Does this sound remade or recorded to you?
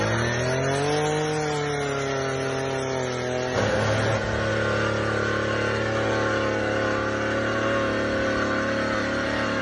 recorded